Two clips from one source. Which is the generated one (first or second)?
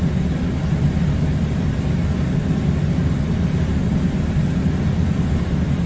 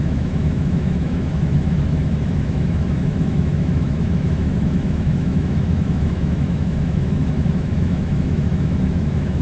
second